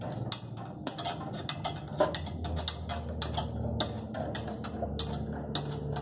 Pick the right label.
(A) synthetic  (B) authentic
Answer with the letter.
B